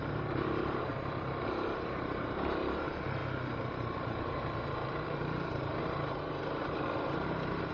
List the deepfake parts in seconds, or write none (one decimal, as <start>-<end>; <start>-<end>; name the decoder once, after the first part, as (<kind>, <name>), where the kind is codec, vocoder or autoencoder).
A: 0.0-3.2 (vocoder, BigVGAN v2); 3.7-7.7